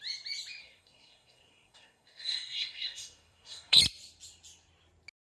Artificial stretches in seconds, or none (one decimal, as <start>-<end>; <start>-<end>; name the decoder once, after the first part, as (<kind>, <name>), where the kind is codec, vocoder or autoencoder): 0.6-3.8 (codec, SNAC)